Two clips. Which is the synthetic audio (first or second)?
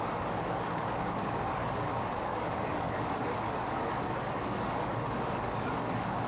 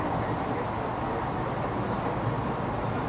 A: first